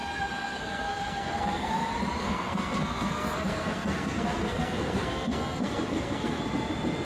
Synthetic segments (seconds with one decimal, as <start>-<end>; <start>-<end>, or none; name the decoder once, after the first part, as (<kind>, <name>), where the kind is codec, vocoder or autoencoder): 0.0-1.7 (codec, SNAC); 2.2-6.4